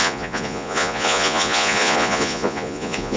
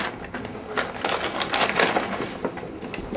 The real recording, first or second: second